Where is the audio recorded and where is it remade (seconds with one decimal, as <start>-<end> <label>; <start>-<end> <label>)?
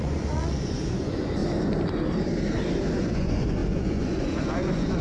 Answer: 0.0-1.4 remade; 1.4-3.0 recorded; 3.0-5.0 remade